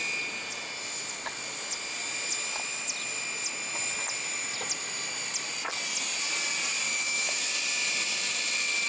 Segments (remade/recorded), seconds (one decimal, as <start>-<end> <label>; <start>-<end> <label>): 0.0-6.9 recorded; 6.9-7.5 remade; 7.5-8.9 recorded